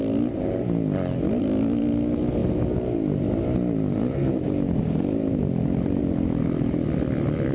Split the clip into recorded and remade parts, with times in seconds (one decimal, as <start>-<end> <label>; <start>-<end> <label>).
0.0-7.5 recorded